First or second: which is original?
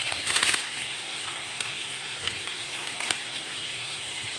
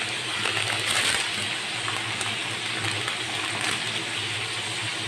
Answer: second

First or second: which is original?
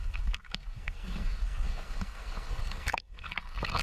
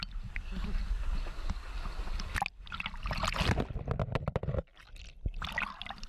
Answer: second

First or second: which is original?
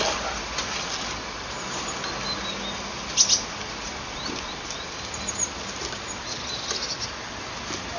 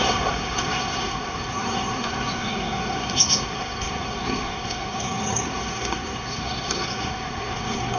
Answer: first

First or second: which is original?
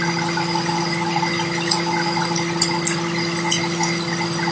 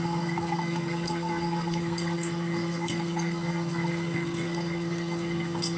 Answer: first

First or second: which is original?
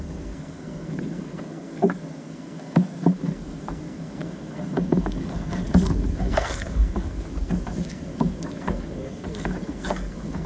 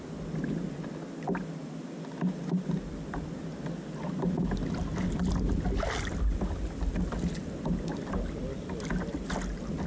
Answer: second